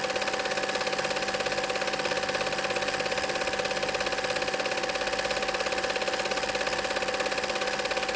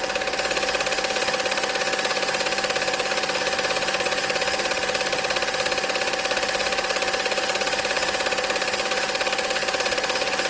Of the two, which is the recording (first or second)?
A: first